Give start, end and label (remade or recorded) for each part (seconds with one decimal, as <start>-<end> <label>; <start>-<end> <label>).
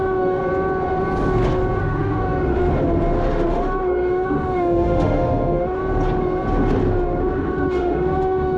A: 0.0-0.4 remade; 0.4-1.8 recorded; 1.8-2.6 remade; 2.6-3.5 recorded; 3.5-5.8 remade; 5.8-7.2 recorded; 7.2-8.6 remade